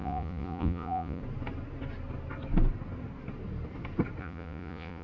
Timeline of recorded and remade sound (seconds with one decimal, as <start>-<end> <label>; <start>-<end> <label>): 0.0-1.2 remade; 1.2-4.2 recorded; 4.2-5.0 remade